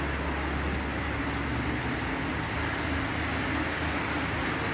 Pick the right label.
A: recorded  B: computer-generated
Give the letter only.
A